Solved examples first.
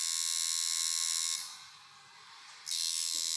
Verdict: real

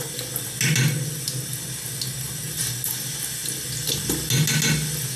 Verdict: real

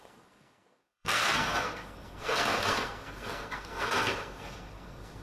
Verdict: fake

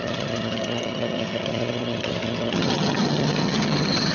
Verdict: fake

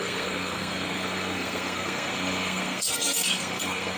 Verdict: fake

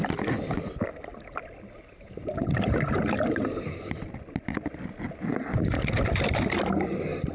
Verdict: real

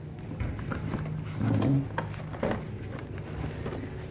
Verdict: real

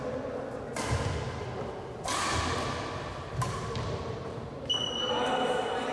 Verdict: real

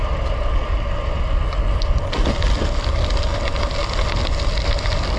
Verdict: real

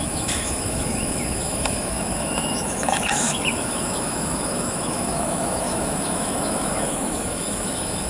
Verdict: fake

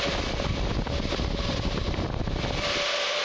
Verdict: fake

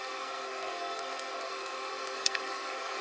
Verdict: fake